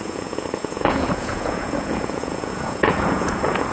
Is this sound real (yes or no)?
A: no